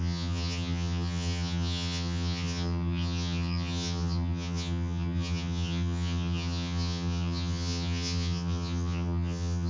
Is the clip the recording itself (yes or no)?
no